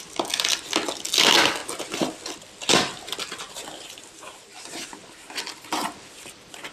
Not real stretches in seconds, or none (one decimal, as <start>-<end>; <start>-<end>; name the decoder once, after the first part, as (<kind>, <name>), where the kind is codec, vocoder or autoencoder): none

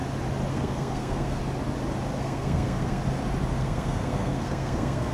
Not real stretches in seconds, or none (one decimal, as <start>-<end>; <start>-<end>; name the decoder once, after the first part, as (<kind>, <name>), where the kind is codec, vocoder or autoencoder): 0.5-1.4 (codec, SNAC); 2.2-3.0; 3.6-5.1

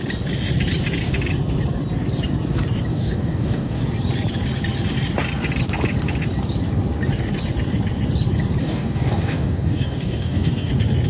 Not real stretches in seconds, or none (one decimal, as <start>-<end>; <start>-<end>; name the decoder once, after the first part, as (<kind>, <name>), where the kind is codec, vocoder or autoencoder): 2.9-3.8 (codec, DAC); 8.6-10.7

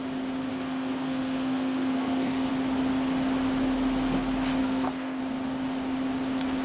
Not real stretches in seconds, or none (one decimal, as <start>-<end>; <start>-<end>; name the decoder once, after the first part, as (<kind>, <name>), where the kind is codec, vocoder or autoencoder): 0.5-2.5 (codec, SNAC); 4.6-5.2

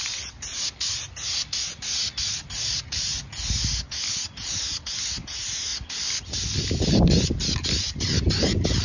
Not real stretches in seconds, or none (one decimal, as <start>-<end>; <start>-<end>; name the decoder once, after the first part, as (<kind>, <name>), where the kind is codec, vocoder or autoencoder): none